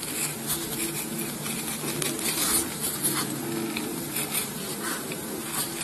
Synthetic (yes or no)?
no